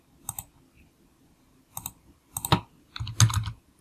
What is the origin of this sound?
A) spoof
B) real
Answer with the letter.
B